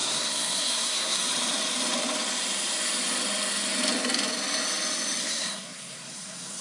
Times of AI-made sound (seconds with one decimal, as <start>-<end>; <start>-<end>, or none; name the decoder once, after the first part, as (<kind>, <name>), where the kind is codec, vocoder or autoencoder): 0.0-1.2 (codec, SNAC); 5.2-6.6